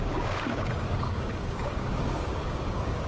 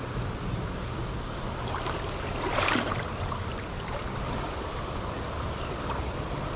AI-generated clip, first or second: first